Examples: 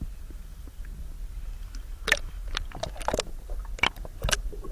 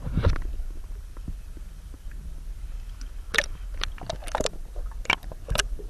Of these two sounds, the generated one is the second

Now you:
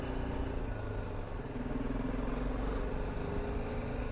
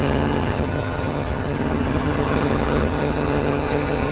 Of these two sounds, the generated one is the second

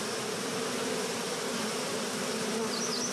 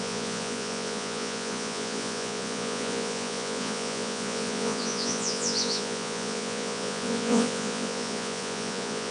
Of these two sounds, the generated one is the second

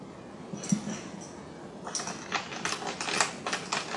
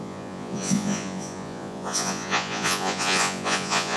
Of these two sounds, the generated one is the second